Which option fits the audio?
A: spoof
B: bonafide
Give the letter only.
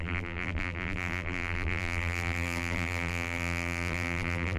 A